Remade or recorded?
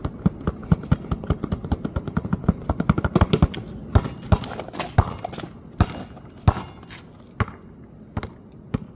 recorded